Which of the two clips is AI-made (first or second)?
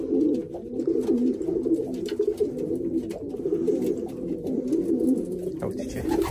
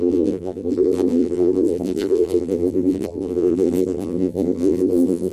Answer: second